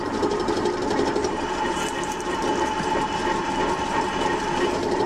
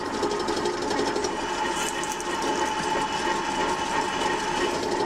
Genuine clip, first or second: second